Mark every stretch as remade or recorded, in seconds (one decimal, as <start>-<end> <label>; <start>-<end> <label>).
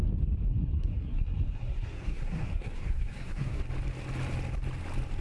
0.0-0.5 recorded; 0.5-3.6 remade; 3.6-5.2 recorded